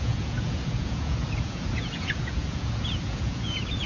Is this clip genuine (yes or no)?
no